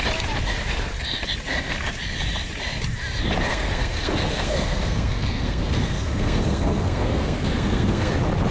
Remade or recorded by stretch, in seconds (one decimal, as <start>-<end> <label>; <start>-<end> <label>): 0.0-3.5 recorded; 3.5-8.1 remade; 8.1-8.5 recorded